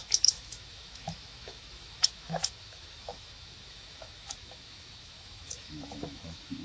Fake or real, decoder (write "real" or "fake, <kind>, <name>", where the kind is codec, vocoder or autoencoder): fake, autoencoder, DAC-VAE